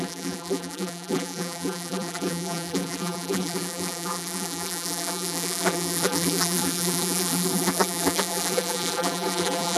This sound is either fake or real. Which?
fake